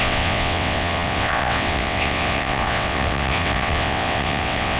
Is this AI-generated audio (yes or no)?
yes